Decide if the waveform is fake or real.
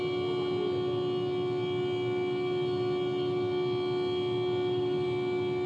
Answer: real